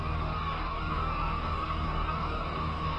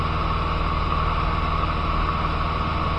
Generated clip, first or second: first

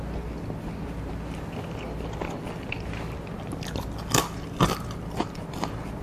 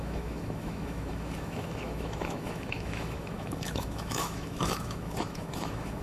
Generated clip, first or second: second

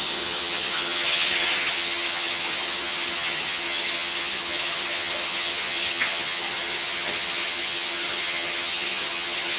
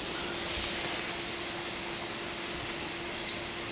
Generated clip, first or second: first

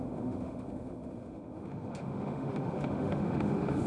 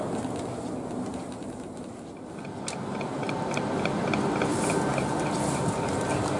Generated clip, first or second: first